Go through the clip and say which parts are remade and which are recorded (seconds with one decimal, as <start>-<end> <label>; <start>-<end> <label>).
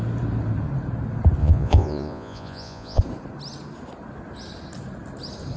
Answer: 0.0-1.4 recorded; 1.4-3.0 remade; 3.0-5.6 recorded